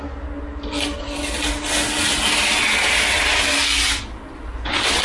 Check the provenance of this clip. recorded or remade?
recorded